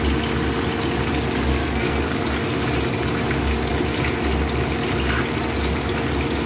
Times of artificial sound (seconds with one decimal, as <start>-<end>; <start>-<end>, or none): 1.5-2.0